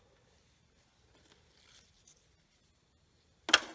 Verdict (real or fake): real